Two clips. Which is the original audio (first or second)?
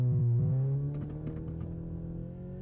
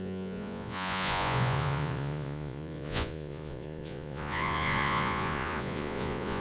first